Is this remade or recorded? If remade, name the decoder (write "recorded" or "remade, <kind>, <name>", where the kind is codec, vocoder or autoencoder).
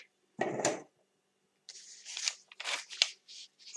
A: recorded